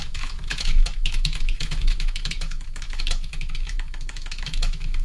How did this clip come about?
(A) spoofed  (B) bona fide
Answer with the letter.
A